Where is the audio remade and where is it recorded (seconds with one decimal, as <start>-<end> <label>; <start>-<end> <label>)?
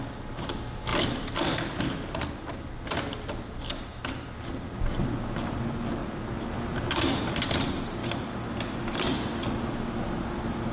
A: 0.0-10.7 recorded